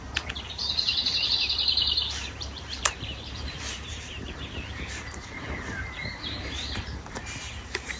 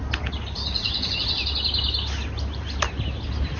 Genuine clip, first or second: second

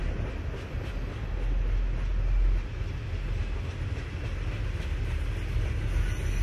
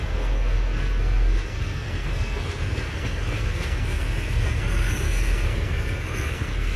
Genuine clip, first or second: first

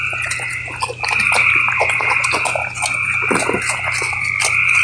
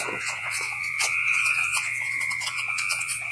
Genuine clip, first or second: first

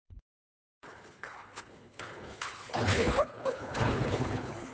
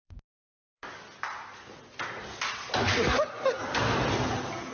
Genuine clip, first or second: second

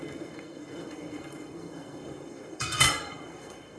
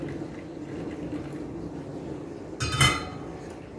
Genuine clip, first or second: second